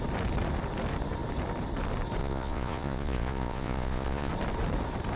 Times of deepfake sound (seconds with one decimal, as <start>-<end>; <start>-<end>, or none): 2.2-4.3